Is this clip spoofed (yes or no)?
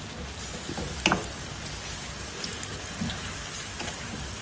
no